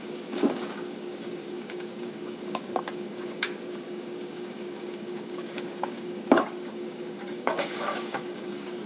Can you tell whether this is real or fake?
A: fake